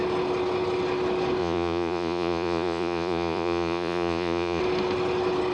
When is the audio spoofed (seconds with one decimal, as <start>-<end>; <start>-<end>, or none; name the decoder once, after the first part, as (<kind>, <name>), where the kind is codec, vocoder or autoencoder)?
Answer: 1.4-4.6 (vocoder, Vocos)